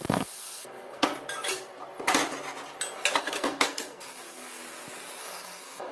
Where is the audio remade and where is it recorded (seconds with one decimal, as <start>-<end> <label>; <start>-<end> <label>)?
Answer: 0.0-1.1 remade; 1.1-3.2 recorded; 3.2-4.6 remade; 4.6-5.2 recorded; 5.2-5.9 remade